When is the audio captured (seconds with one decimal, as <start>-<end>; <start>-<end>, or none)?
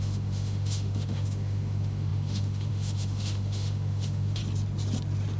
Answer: 4.4-5.4